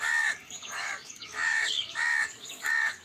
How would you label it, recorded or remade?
remade